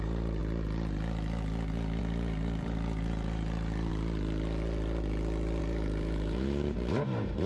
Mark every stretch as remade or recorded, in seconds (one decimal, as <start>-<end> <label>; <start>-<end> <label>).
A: 0.0-0.4 remade; 0.4-2.0 recorded; 2.0-3.9 remade; 3.9-5.6 recorded; 5.6-7.5 remade